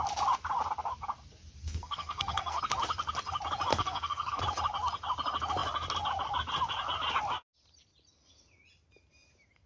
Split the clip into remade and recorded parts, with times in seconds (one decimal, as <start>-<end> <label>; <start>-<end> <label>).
0.0-1.6 recorded; 1.6-2.6 remade; 2.6-3.7 recorded; 3.7-4.4 remade; 4.4-9.7 recorded